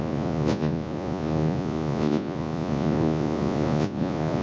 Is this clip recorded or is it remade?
remade